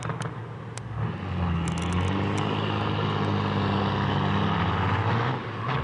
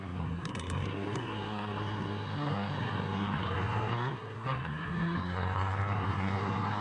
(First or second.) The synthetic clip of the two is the second